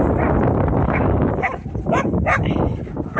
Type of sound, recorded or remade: recorded